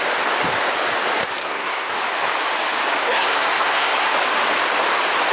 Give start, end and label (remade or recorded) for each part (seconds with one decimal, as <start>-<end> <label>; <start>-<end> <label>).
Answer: 0.0-1.4 recorded; 1.4-1.9 remade; 1.9-3.0 recorded; 3.0-4.1 remade; 4.1-5.3 recorded